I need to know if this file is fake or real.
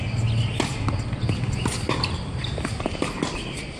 real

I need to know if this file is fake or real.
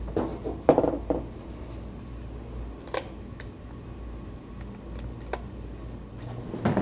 real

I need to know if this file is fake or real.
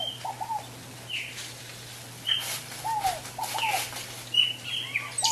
real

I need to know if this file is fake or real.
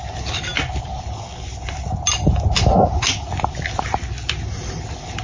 real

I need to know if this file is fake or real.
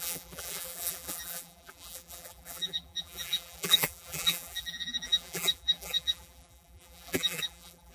fake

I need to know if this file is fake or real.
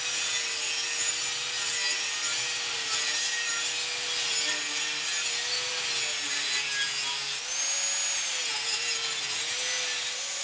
real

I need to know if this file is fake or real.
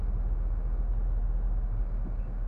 real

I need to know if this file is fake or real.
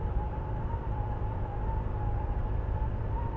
fake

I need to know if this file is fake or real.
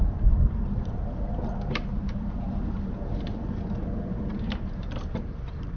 fake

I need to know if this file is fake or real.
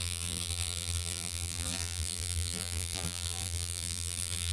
fake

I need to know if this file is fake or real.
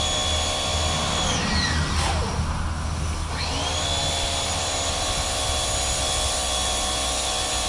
real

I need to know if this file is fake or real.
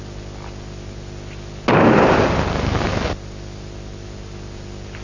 real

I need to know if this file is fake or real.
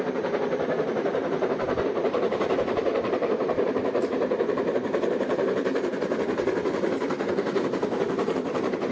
fake